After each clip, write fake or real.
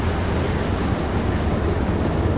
real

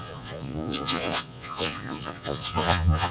fake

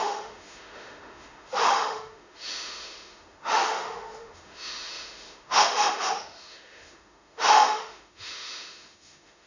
fake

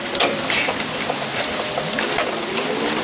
real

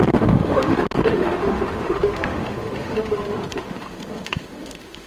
fake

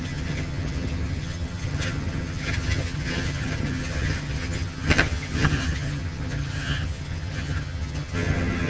fake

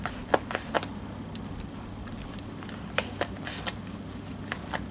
real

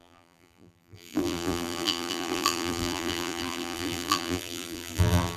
fake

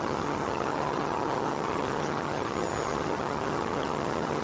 fake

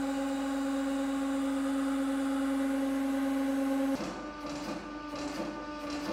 real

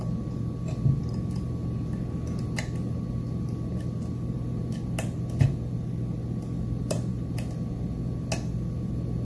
real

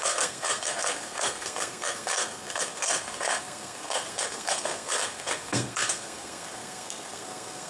fake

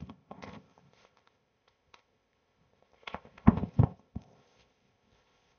fake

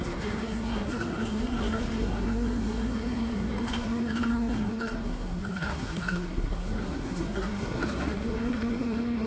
fake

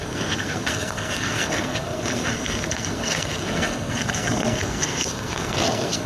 fake